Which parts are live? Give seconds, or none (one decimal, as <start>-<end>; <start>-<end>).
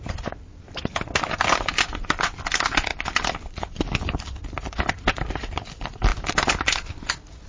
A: 0.0-7.5